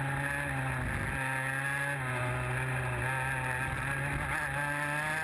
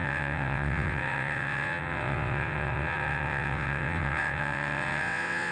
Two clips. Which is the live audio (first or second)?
first